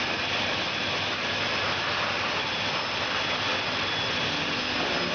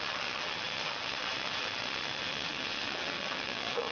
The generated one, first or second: second